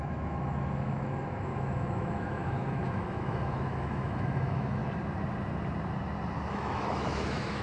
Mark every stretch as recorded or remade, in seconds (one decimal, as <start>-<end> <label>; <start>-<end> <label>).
0.0-4.8 remade; 4.8-6.5 recorded; 6.5-7.6 remade